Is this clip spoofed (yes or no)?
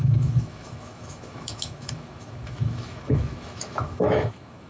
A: yes